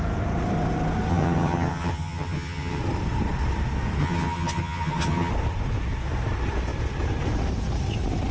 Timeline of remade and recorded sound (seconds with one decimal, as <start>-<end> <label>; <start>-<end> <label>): 0.0-1.1 recorded; 1.1-2.8 remade; 2.8-4.0 recorded; 4.0-5.3 remade; 5.3-8.3 recorded